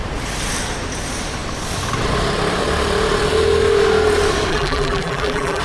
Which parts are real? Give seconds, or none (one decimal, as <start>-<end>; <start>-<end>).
0.0-4.5